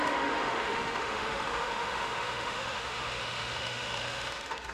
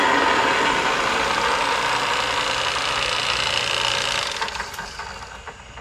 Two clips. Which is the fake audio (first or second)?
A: first